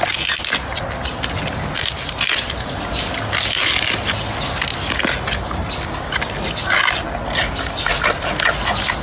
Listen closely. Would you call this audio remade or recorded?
recorded